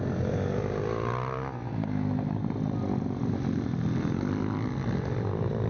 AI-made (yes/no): no